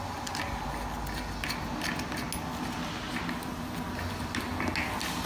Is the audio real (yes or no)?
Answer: yes